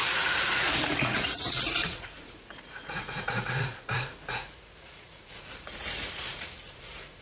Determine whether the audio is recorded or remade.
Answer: remade